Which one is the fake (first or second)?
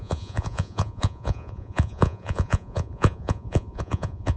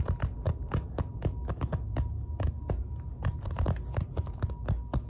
first